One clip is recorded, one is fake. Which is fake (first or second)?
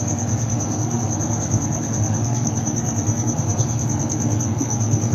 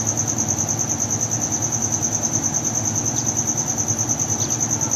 first